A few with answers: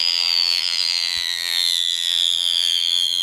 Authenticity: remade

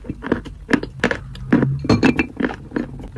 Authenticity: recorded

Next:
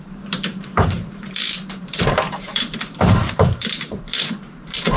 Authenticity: remade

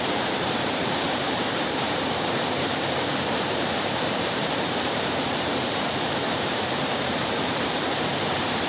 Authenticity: remade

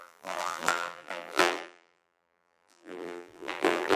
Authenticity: remade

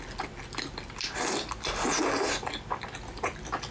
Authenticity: recorded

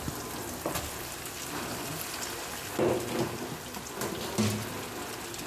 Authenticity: recorded